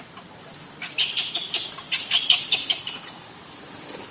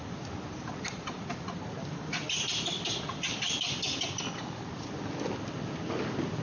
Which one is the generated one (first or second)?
first